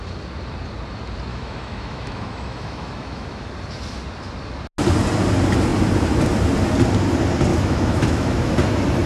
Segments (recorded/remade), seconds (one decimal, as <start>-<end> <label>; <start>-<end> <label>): 0.0-1.3 recorded; 1.3-3.5 remade; 3.5-7.5 recorded; 7.5-8.5 remade; 8.5-9.1 recorded